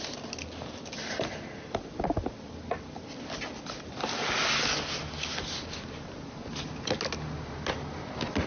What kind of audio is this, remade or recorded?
recorded